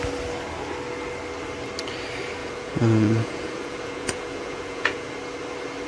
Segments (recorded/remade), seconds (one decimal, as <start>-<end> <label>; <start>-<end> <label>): 0.0-2.4 recorded; 2.4-5.1 remade; 5.1-5.9 recorded